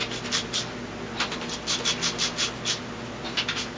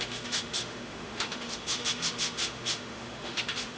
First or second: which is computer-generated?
second